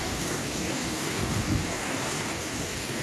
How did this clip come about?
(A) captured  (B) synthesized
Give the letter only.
B